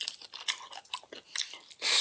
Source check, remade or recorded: recorded